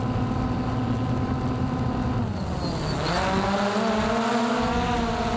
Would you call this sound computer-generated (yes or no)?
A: no